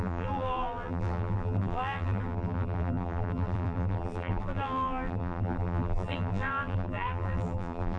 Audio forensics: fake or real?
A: fake